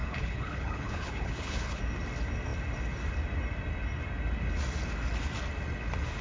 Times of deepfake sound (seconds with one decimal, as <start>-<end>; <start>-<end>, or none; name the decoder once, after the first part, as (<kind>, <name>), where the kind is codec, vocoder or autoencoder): 0.0-1.8 (codec, HILCodec)